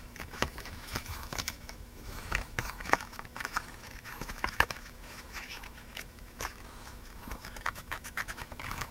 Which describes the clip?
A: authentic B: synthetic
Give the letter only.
B